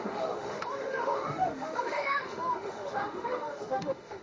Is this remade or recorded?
remade